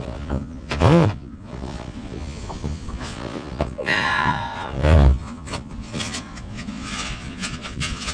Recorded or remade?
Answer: remade